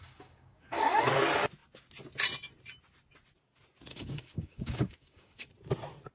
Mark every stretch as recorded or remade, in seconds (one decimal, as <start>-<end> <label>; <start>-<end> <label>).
0.0-1.1 remade; 1.1-3.9 recorded; 3.9-5.5 remade; 5.5-6.1 recorded